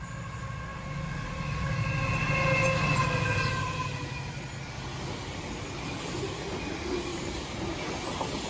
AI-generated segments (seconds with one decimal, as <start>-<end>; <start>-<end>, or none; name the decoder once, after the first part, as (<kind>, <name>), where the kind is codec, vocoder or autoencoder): 7.1-7.8 (vocoder, BigVGAN v2)